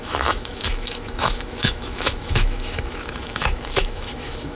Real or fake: fake